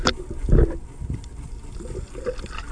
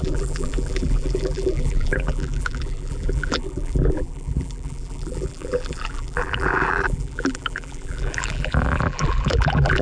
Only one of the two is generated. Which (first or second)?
second